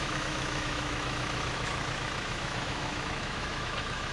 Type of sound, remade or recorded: remade